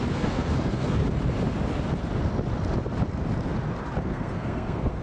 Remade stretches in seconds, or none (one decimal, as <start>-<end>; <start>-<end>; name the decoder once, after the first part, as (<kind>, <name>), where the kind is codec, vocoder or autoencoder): 0.0-1.0 (codec, SNAC); 4.0-5.0